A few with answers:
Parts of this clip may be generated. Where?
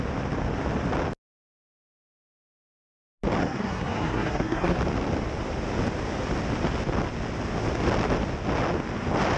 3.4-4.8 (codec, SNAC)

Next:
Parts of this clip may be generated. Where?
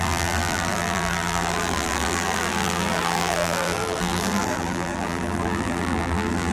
0.0-6.5 (vocoder, BigVGAN v2)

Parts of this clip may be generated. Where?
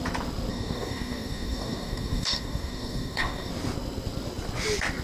0.5-3.5 (codec, DAC)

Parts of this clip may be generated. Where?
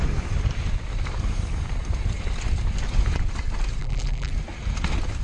3.8-4.3 (vocoder, BigVGAN v2)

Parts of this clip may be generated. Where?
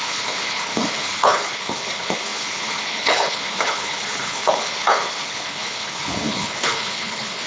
0.0-7.5 (codec, HILCodec)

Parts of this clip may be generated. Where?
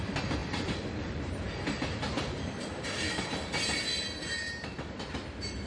0.4-3.8 (vocoder, BigVGAN v2)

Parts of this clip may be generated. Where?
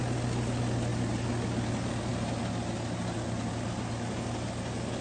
none